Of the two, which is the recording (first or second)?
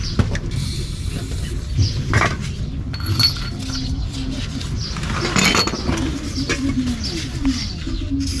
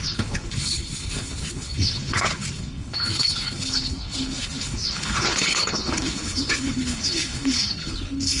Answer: first